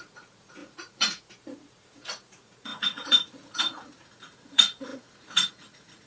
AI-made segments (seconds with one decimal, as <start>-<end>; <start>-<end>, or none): 0.0-6.1